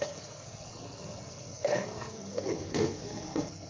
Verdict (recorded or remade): remade